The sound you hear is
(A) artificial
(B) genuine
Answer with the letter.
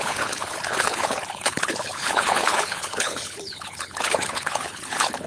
A